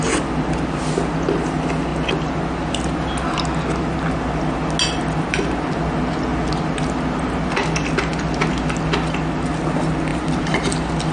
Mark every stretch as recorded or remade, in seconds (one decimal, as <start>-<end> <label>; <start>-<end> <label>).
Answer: 0.0-10.1 recorded; 10.1-11.1 remade

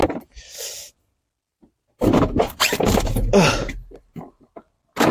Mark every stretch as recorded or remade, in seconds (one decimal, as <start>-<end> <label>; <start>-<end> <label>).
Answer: 0.0-1.5 recorded; 1.5-4.6 remade; 4.6-5.1 recorded

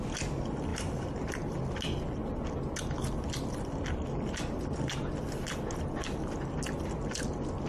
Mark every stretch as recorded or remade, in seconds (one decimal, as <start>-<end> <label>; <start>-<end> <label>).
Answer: 0.0-0.7 recorded; 0.7-1.6 remade; 1.6-7.7 recorded

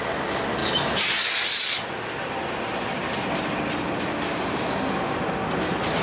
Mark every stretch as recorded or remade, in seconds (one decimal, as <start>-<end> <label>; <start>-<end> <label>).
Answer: 0.0-6.0 recorded

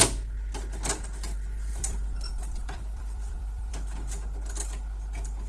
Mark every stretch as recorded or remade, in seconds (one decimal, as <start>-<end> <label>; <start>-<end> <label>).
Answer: 0.0-1.7 recorded; 1.7-3.7 remade; 3.7-5.5 recorded